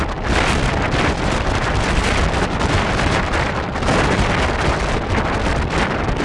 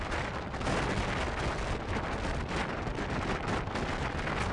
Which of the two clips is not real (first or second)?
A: first